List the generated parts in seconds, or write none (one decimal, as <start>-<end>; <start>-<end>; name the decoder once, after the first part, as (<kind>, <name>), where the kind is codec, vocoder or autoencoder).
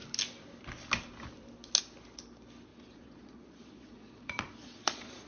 2.7-5.3 (vocoder, Vocos)